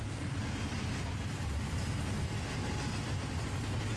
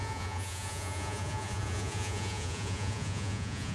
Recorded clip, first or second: first